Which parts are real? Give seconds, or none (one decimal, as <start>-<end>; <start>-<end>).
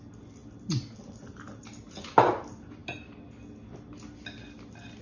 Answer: 0.0-5.0